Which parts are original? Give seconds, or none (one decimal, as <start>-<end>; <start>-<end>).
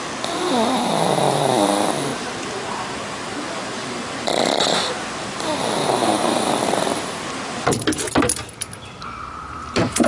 0.0-5.8; 6.5-10.1